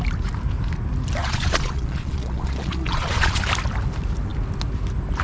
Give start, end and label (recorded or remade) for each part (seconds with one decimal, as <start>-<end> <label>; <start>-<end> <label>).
0.0-1.2 recorded; 1.2-3.4 remade; 3.4-5.2 recorded